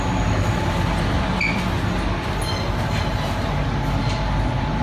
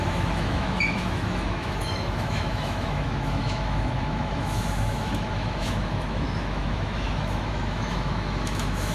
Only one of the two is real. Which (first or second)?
first